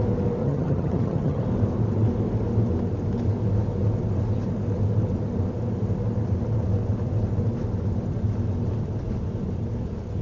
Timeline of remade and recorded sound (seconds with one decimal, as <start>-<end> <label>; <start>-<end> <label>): 0.0-0.4 recorded; 0.4-1.4 remade; 1.4-10.2 recorded